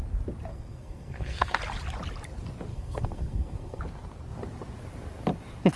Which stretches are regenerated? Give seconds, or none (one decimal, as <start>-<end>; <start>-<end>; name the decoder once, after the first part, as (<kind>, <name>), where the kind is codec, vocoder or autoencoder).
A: 0.5-1.6 (codec, SNAC); 2.7-3.8